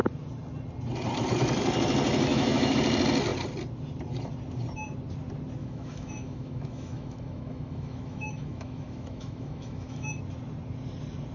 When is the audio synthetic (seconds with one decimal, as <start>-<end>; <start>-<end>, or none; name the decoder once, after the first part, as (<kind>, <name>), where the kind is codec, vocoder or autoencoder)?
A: 2.3-2.8 (autoencoder, DAC-VAE); 5.6-10.2